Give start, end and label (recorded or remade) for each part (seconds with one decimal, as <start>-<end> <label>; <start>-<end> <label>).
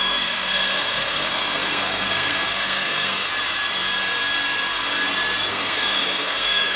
0.0-3.3 remade; 3.3-5.5 recorded; 5.5-6.8 remade